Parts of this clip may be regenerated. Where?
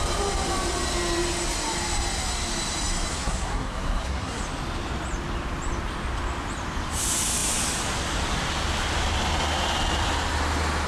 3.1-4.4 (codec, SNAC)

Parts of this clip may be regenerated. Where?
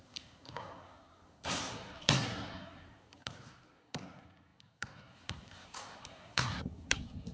0.0-7.3 (codec, SNAC)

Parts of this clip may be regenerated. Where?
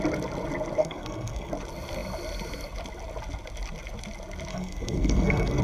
0.8-1.5 (codec, SNAC); 4.5-5.6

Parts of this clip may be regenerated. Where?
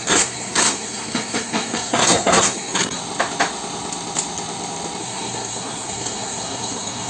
0.0-3.0 (codec, SNAC); 5.0-7.1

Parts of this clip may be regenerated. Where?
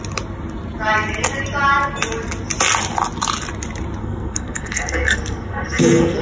4.0-6.2 (codec, SNAC)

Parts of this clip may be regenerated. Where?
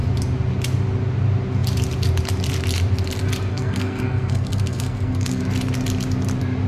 3.5-5.4 (codec, SNAC)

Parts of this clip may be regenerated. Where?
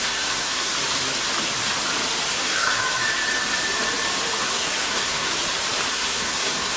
0.0-0.7 (codec, SNAC); 2.3-2.8; 4.4-5.3; 5.9-6.8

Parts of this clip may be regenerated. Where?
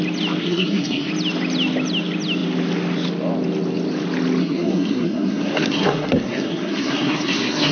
0.4-1.1 (codec, SNAC); 4.4-7.7